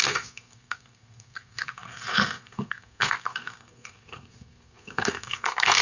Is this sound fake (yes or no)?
yes